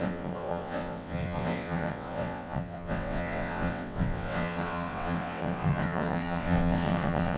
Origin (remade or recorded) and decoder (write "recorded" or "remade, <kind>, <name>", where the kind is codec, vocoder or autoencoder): remade, vocoder, WaveNeXt